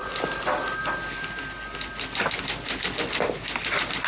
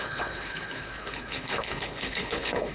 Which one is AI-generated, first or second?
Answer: second